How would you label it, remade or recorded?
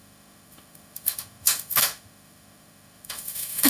remade